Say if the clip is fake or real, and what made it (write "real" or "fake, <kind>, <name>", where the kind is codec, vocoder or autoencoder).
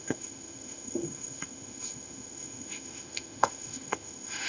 fake, autoencoder, DAC-VAE